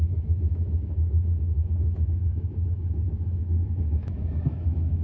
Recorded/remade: remade